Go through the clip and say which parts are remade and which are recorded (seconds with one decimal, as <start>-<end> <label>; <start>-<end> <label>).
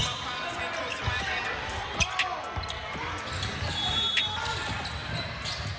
0.0-5.8 recorded